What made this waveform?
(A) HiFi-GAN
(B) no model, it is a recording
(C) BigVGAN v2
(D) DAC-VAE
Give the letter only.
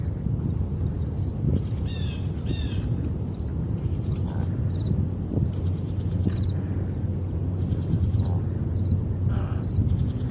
B